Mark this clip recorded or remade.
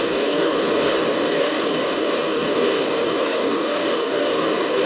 remade